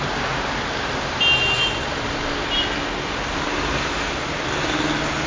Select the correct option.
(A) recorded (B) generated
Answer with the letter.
A